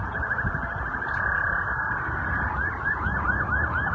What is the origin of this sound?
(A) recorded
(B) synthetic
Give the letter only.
A